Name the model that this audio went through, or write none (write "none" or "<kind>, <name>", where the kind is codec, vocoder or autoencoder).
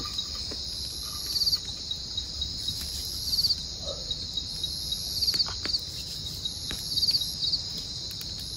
none